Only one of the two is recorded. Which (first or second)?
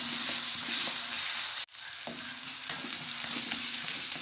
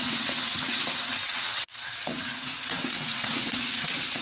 first